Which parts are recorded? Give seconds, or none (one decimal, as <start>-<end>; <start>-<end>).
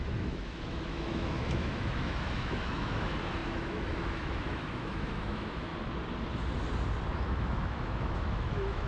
5.7-7.1